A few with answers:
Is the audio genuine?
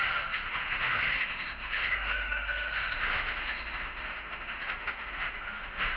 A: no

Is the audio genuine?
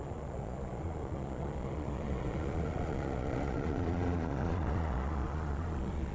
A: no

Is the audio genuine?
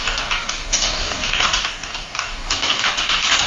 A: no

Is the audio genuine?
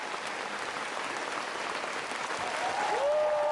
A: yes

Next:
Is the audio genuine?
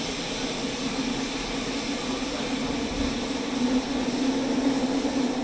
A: yes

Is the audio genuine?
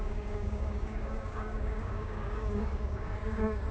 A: no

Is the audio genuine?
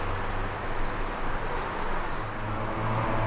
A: yes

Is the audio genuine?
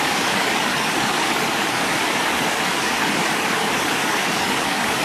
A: no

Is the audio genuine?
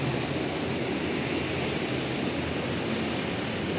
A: yes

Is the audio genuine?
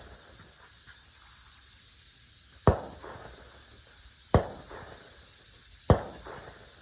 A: yes